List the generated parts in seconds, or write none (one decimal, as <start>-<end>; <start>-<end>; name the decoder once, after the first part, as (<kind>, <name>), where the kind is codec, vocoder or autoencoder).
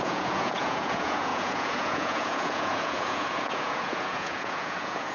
0.0-5.1 (vocoder, Vocos)